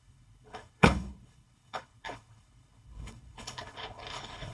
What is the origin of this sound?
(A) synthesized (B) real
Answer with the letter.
A